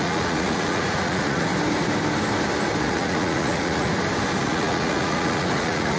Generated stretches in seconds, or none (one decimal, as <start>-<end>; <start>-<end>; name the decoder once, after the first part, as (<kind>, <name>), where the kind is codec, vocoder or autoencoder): 0.0-1.5 (vocoder, Vocos); 2.8-3.9; 4.4-6.0